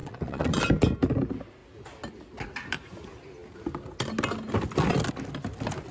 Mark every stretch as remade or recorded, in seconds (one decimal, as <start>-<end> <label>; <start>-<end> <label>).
0.0-0.6 remade; 0.6-5.9 recorded